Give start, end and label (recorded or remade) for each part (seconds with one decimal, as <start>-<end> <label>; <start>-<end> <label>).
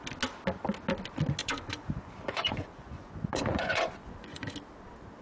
0.0-1.4 recorded; 1.4-4.5 remade; 4.5-5.2 recorded